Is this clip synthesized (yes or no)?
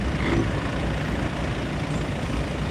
no